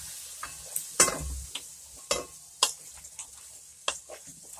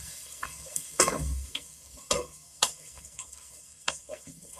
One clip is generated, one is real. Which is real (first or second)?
first